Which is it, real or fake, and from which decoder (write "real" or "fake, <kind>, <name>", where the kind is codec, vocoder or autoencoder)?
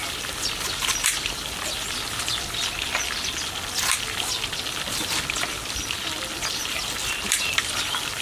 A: real